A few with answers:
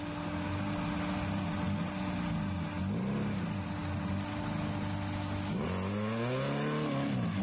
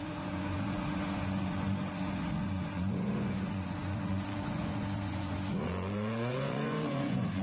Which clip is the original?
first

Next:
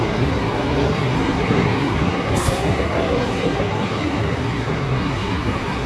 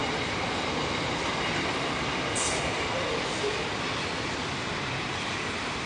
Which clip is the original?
second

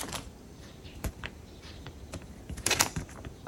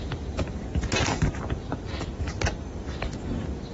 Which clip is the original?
second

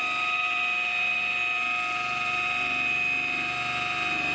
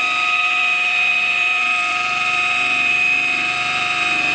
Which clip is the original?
first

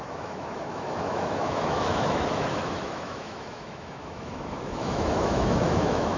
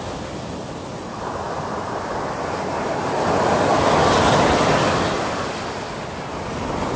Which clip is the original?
second